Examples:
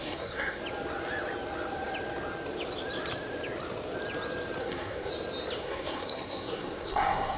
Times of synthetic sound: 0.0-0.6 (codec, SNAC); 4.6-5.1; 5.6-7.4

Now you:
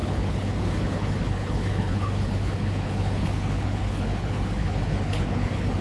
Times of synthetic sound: 0.0-5.8 (codec, HILCodec)

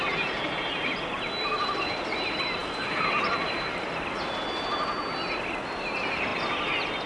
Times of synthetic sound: none

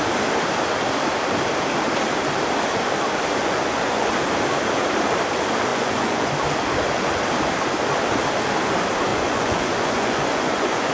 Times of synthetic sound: 3.4-4.1 (vocoder, Vocos); 5.7-6.3; 9.1-10.9

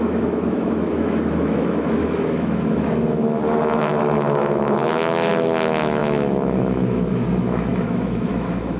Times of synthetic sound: 0.0-8.8 (autoencoder, DAC-VAE)

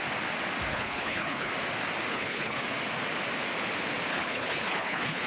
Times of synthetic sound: 0.7-1.5 (codec, HILCodec); 2.1-2.6; 4.1-5.3